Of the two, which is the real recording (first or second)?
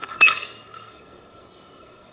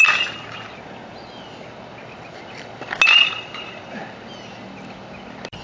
second